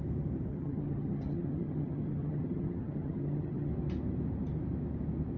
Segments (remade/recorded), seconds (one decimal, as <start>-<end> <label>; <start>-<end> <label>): 0.0-0.5 recorded; 0.5-3.7 remade; 3.7-5.4 recorded